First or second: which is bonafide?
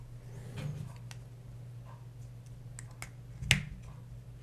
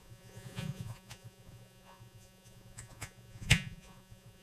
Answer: first